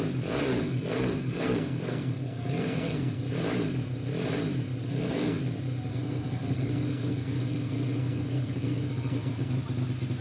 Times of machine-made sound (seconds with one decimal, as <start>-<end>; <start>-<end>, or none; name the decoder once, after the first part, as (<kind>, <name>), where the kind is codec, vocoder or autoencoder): 0.5-3.2 (codec, SNAC); 4.8-5.4; 5.9-9.5